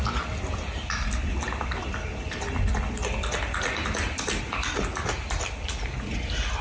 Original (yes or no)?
yes